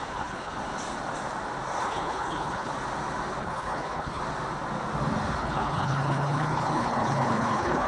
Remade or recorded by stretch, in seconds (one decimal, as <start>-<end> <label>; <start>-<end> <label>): 0.0-0.6 remade; 0.6-1.8 recorded; 1.8-2.7 remade; 2.7-3.4 recorded; 3.4-4.2 remade; 4.2-5.4 recorded; 5.4-7.9 remade